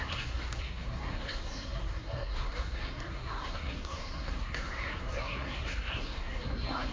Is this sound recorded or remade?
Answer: remade